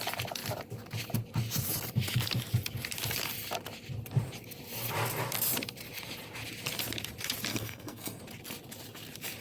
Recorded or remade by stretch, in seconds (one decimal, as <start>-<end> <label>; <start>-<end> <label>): 0.0-7.5 recorded; 7.5-8.2 remade; 8.2-9.4 recorded